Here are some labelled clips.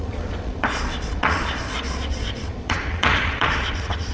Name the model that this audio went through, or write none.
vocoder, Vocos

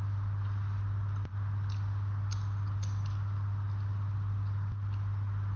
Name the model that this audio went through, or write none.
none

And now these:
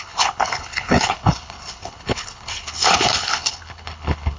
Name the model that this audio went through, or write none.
codec, HILCodec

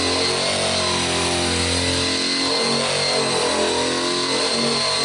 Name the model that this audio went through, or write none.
none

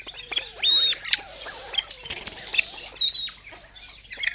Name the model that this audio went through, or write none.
none